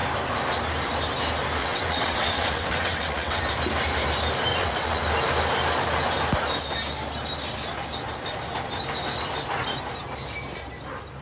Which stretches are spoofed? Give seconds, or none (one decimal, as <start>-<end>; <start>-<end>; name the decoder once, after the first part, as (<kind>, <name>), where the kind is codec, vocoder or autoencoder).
1.6-3.4 (vocoder, WaveNeXt); 4.5-5.0